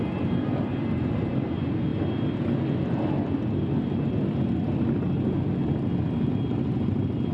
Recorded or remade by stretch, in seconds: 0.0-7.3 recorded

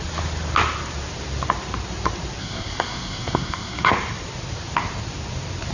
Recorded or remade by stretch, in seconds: 0.0-2.4 recorded; 2.4-3.9 remade; 3.9-5.7 recorded

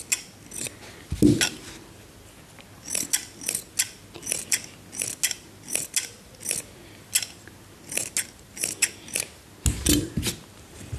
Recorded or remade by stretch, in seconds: 0.0-11.0 recorded

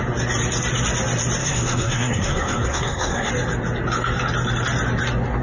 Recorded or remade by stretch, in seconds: 0.0-1.4 recorded; 1.4-3.3 remade; 3.3-5.4 recorded